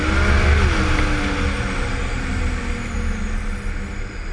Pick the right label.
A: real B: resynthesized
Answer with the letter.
A